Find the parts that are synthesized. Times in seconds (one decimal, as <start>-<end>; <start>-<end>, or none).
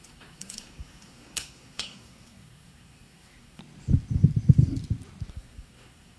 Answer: 0.0-3.6; 5.3-6.2